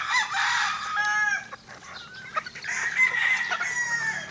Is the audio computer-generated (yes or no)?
no